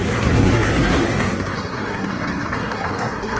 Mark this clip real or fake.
fake